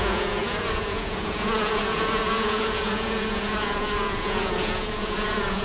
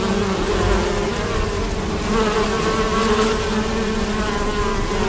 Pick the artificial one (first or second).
first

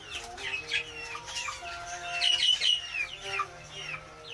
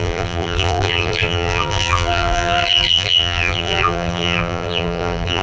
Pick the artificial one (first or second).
second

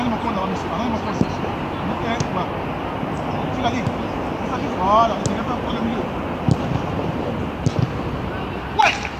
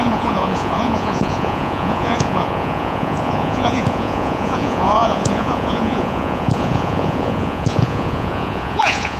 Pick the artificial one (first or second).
second